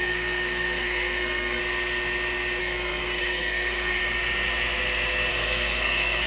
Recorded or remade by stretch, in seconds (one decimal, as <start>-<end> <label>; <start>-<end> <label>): 0.0-1.6 remade; 1.6-2.6 recorded; 2.6-4.0 remade; 4.0-5.3 recorded; 5.3-6.3 remade